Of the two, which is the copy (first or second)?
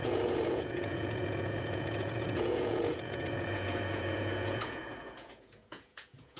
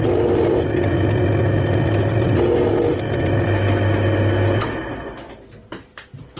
first